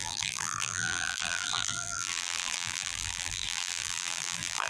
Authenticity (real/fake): fake